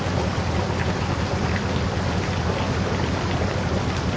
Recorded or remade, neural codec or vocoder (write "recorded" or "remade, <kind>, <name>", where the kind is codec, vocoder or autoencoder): recorded